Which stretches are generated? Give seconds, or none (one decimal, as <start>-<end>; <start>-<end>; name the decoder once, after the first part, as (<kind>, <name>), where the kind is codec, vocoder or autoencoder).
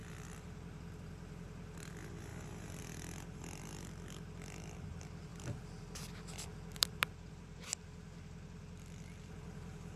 0.0-1.9 (vocoder, BigVGAN v2); 5.3-10.0